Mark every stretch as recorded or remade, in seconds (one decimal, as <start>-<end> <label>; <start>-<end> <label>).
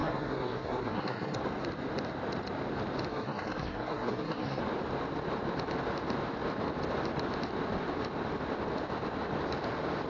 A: 0.0-1.4 remade; 1.4-3.1 recorded; 3.1-4.6 remade; 4.6-10.1 recorded